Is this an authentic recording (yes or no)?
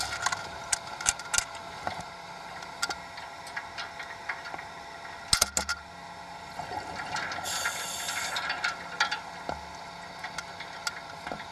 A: yes